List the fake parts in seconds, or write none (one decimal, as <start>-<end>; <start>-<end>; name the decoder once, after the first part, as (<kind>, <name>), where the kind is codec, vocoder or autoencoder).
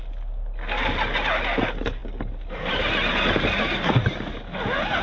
none